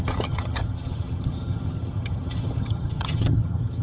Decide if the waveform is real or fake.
fake